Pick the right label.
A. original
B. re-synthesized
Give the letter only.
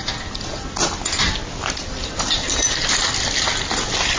A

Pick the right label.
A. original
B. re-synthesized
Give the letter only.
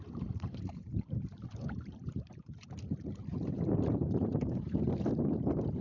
B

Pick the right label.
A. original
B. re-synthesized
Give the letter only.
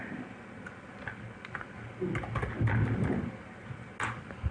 A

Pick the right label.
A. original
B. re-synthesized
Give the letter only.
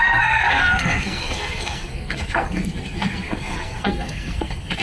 B